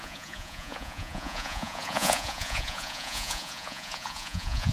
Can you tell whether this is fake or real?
fake